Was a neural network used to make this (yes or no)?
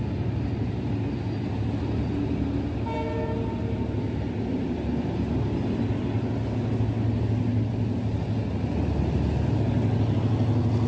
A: no